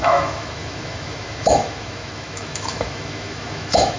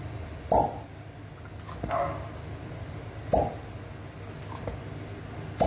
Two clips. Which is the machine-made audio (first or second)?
first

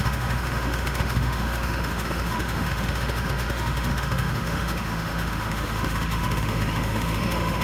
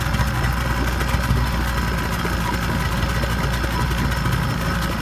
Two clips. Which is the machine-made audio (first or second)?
first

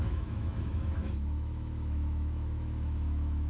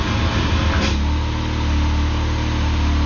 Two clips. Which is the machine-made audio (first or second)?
first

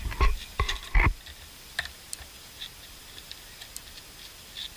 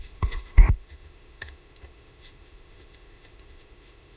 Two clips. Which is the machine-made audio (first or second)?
second